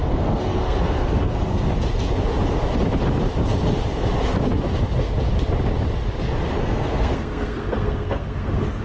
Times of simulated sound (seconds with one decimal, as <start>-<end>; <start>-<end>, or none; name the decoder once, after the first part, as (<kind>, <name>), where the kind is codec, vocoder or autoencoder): 0.0-1.7 (codec, SNAC); 6.6-8.8